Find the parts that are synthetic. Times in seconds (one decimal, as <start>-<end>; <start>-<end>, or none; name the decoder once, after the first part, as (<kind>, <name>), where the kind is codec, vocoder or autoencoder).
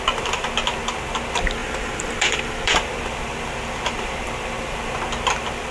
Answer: 1.6-5.0 (vocoder, BigVGAN v2)